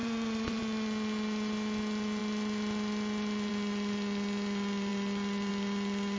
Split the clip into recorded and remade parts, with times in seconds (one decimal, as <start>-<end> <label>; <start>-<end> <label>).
0.0-0.6 remade; 0.6-6.2 recorded